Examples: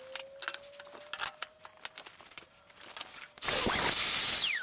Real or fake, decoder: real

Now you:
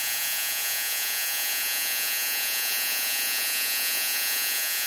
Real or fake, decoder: fake, vocoder, Vocos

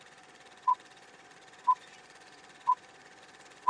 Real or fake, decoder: fake, vocoder, Vocos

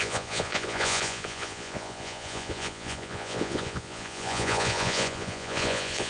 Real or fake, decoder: fake, vocoder, Vocos